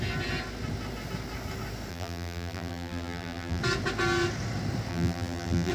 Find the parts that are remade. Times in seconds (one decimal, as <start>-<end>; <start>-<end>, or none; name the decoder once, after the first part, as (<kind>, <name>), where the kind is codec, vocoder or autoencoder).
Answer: 1.9-3.6 (vocoder, BigVGAN v2); 4.9-5.7